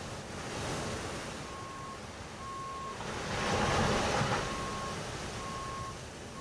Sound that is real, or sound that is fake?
real